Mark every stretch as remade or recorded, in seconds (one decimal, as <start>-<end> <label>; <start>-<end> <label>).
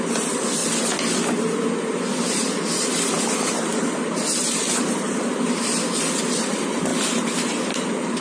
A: 0.0-0.6 remade; 0.6-1.9 recorded; 1.9-3.7 remade; 3.7-4.4 recorded; 4.4-6.9 remade; 6.9-7.6 recorded; 7.6-8.2 remade